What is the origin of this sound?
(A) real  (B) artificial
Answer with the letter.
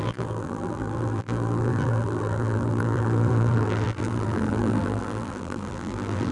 B